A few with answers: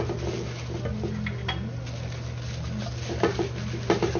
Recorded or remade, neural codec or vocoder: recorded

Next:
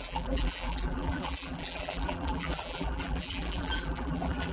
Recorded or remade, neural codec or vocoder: remade, vocoder, BigVGAN v2